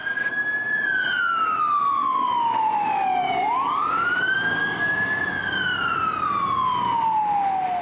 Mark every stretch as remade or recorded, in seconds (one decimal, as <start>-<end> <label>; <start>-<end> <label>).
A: 0.0-4.6 recorded; 4.6-5.2 remade; 5.2-7.8 recorded